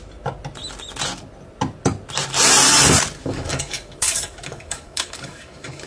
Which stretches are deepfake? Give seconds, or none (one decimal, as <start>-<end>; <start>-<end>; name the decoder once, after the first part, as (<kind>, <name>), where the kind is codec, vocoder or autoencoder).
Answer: 3.2-5.9 (codec, DAC)